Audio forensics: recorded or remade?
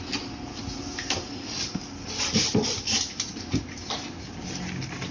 recorded